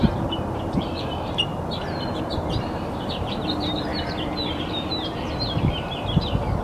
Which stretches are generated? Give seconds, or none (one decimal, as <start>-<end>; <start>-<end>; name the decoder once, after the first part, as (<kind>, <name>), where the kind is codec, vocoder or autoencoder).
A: 0.0-1.5 (vocoder, BigVGAN v2); 2.2-6.6